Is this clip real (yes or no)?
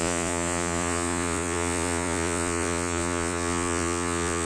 no